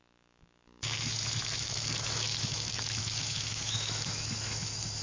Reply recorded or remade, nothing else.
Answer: remade